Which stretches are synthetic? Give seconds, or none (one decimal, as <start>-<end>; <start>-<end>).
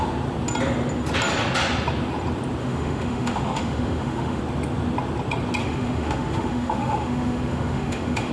2.6-4.4; 5.6-8.3